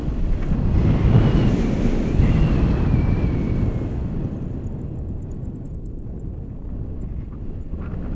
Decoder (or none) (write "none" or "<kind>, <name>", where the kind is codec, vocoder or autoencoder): none